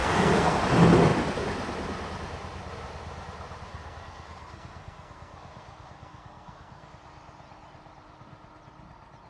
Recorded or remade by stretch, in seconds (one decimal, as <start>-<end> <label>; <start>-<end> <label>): 0.0-0.6 remade; 0.6-3.7 recorded; 3.7-6.9 remade; 6.9-9.3 recorded